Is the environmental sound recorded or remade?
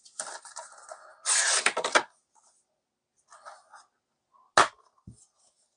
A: recorded